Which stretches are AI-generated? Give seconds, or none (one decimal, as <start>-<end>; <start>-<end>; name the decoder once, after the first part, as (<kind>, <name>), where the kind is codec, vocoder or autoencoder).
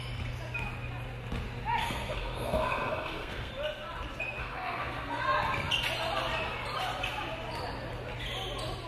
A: 1.8-3.5 (codec, SNAC); 4.4-5.2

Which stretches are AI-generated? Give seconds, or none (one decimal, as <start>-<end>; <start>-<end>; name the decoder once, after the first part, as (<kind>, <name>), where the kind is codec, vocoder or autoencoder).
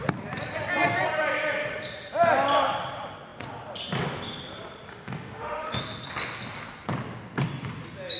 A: 4.9-5.8 (autoencoder, DAC-VAE)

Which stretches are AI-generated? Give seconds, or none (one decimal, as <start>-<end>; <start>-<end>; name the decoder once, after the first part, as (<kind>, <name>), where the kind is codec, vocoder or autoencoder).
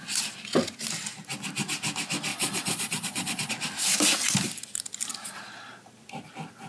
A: 2.3-3.5 (vocoder, Vocos)